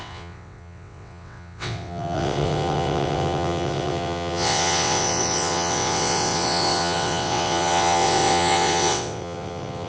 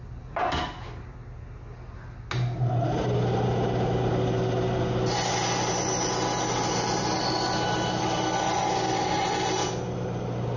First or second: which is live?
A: second